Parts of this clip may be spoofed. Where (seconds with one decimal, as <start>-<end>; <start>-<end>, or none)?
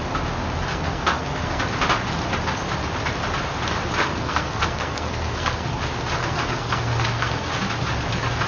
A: 0.7-1.6; 4.0-5.8; 6.2-7.5